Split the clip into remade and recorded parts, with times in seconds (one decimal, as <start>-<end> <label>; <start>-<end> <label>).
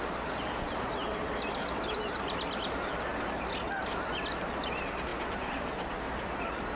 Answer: 0.0-3.1 remade; 3.1-3.7 recorded; 3.7-6.8 remade